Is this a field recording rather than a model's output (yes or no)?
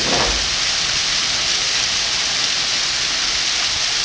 yes